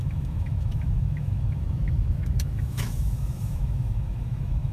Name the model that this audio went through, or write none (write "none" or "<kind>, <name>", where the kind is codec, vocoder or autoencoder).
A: autoencoder, DAC-VAE